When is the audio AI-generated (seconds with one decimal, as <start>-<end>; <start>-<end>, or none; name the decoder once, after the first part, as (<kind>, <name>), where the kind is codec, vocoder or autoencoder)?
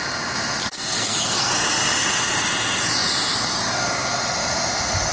0.7-1.5 (codec, SNAC)